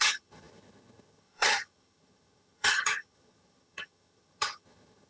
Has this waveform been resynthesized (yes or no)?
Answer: yes